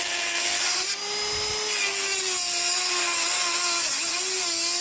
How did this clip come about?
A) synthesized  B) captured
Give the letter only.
B